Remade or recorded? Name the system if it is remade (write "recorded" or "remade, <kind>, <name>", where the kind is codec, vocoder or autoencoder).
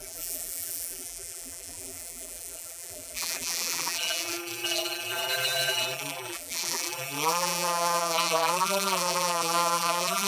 remade, vocoder, BigVGAN v2